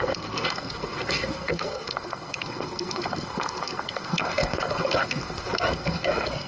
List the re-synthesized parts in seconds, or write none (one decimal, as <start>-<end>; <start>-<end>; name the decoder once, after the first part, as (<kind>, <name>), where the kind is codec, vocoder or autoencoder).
0.0-6.5 (codec, SNAC)

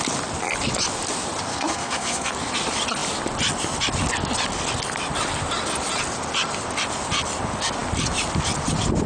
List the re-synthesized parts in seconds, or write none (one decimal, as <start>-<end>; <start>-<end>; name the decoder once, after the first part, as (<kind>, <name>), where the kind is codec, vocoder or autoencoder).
1.5-2.3 (codec, SNAC)

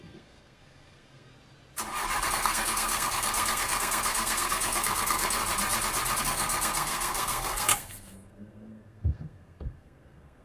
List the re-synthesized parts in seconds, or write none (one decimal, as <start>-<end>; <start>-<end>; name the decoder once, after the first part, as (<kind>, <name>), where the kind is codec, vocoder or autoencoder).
0.0-1.3 (codec, SNAC); 2.3-5.4; 6.2-10.4

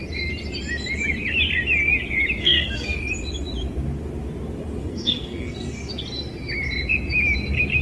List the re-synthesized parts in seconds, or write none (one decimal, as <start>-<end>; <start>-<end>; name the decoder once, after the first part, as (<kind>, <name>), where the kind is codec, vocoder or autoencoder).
2.4-3.0 (codec, SNAC); 4.8-5.9

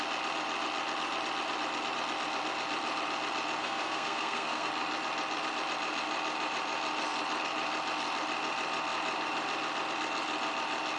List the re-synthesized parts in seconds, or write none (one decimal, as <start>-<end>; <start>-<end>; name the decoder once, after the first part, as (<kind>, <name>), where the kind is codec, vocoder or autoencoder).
3.6-4.7 (codec, SNAC)

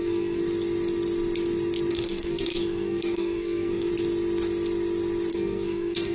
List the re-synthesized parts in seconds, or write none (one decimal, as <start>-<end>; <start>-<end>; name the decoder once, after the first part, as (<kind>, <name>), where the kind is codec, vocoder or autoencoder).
0.0-0.4 (codec, SNAC); 1.9-3.9; 5.3-6.1

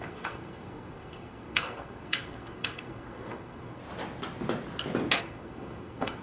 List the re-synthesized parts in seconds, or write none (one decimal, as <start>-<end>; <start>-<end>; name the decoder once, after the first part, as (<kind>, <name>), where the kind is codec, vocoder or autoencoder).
0.0-3.8 (codec, SNAC); 5.2-6.2

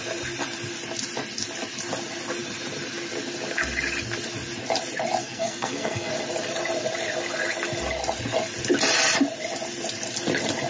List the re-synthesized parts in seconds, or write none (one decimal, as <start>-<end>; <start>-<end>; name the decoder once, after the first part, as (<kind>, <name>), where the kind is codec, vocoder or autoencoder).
5.2-6.1 (codec, SNAC)